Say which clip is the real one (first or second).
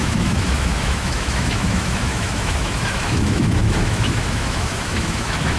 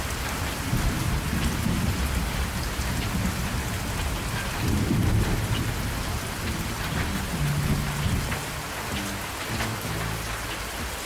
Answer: second